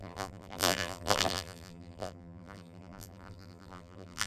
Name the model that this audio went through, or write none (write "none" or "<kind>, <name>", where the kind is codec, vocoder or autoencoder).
vocoder, BigVGAN v2